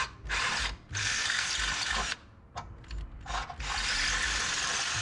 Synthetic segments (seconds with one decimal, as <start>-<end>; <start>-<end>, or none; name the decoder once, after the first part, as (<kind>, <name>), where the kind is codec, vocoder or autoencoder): 1.0-1.5 (codec, SNAC)